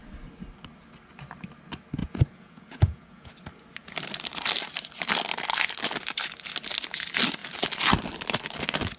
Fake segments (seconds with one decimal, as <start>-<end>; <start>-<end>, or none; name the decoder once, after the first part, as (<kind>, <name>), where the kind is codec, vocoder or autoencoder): 2.0-3.3 (vocoder, Vocos)